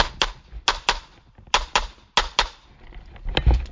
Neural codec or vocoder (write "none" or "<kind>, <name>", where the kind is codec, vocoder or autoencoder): none